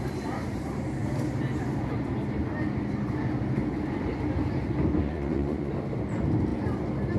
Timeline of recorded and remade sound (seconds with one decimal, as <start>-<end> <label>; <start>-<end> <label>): 0.0-5.0 recorded; 5.0-5.7 remade; 5.7-7.2 recorded